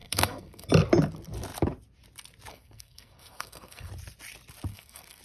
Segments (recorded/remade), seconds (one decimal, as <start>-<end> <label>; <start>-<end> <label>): 0.0-0.7 remade; 0.7-2.5 recorded; 2.5-3.9 remade; 3.9-4.7 recorded; 4.7-5.2 remade